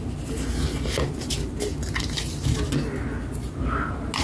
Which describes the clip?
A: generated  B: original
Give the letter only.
B